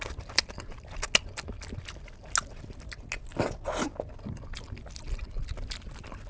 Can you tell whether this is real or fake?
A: real